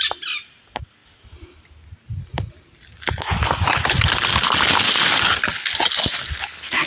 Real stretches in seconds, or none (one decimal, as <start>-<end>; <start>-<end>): 0.0-6.9